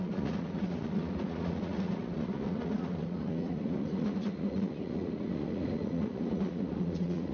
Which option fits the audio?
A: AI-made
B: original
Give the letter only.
A